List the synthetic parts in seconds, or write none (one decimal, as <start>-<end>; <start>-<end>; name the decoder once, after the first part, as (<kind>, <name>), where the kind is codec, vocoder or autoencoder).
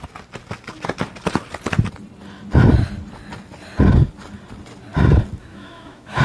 5.4-6.2 (autoencoder, DAC-VAE)